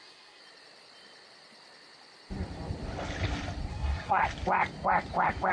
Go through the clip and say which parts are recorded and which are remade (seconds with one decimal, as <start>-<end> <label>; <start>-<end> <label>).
0.0-0.4 remade; 0.4-3.7 recorded; 3.7-4.2 remade; 4.2-5.5 recorded